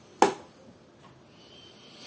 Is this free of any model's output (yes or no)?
yes